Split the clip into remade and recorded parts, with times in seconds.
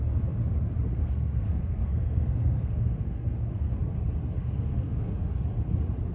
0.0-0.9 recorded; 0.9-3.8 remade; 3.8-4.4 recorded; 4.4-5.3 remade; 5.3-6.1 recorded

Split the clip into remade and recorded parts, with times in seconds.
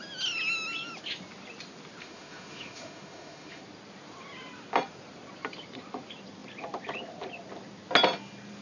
0.0-2.0 recorded; 2.0-3.6 remade; 3.6-8.6 recorded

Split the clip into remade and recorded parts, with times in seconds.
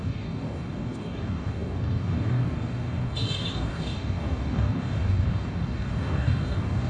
0.0-6.9 remade